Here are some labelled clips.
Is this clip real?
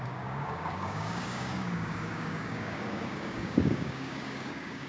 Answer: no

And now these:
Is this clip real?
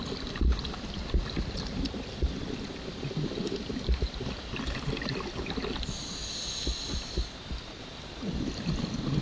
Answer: yes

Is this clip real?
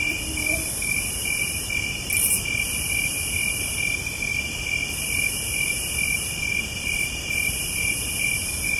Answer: no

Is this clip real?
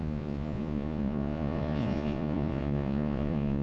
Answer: no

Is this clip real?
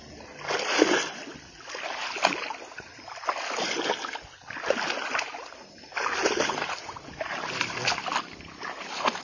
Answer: yes